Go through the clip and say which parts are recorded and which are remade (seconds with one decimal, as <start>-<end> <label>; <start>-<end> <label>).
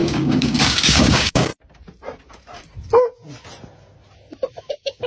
0.0-1.5 remade; 1.5-4.6 recorded; 4.6-5.1 remade